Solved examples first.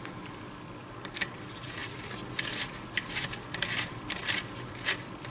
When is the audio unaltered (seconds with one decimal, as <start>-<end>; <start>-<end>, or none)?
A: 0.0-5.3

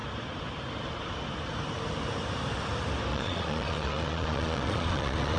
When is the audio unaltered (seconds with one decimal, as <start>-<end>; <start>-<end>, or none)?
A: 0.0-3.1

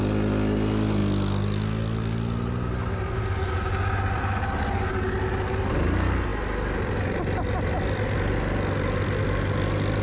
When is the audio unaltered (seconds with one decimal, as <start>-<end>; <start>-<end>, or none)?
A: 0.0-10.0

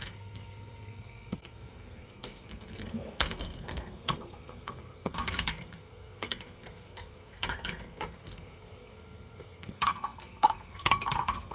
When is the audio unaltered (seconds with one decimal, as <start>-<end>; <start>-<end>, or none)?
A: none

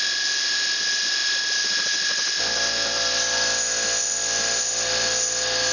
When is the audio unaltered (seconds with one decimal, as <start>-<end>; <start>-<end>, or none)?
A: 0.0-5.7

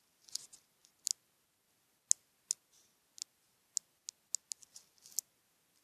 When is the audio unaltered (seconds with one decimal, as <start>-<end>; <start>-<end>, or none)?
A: 0.0-5.8

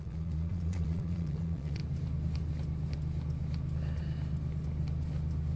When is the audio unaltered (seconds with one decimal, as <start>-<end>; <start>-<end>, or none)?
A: 1.8-5.6